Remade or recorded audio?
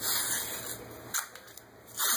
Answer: recorded